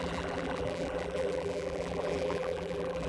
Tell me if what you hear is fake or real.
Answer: fake